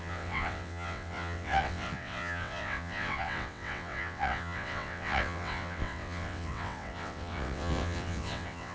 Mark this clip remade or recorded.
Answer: remade